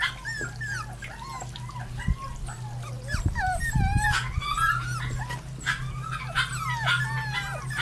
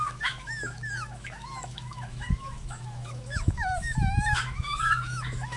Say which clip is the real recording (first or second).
first